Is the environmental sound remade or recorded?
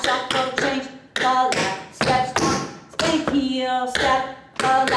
recorded